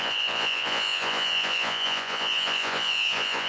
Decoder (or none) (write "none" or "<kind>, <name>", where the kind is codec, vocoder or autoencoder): vocoder, Vocos